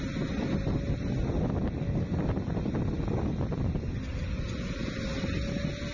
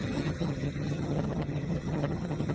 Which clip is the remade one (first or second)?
second